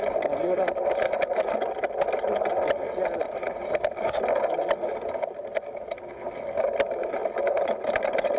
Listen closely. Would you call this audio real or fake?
real